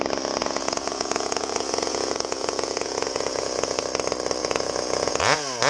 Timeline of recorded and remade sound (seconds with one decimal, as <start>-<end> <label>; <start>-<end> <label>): 0.0-0.4 recorded; 0.4-3.8 remade; 3.8-4.4 recorded; 4.4-5.2 remade; 5.2-5.7 recorded